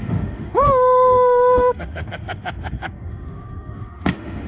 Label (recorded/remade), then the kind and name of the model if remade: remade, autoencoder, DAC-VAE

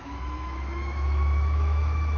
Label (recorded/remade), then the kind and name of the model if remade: remade, autoencoder, DAC-VAE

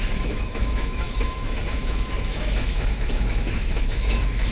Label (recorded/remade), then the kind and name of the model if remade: remade, autoencoder, DAC-VAE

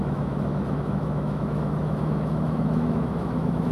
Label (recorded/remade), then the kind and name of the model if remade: remade, autoencoder, DAC-VAE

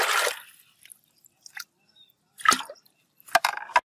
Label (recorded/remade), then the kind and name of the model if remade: recorded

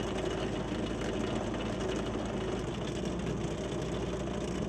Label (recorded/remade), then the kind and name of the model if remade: recorded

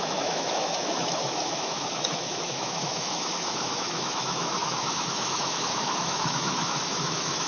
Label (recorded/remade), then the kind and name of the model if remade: remade, autoencoder, DAC-VAE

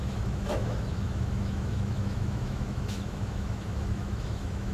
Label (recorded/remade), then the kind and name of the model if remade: remade, autoencoder, DAC-VAE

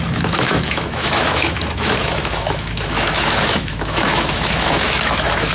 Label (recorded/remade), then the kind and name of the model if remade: remade, autoencoder, DAC-VAE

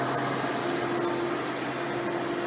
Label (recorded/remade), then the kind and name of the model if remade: recorded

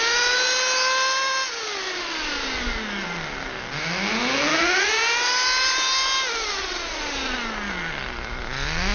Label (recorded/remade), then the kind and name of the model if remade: recorded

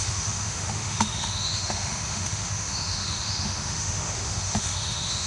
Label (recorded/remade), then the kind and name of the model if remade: remade, autoencoder, DAC-VAE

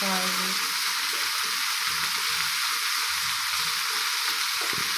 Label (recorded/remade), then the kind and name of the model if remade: recorded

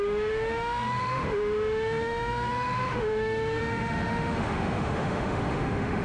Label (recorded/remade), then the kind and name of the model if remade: remade, autoencoder, DAC-VAE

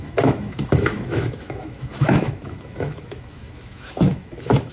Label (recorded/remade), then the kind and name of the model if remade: remade, autoencoder, DAC-VAE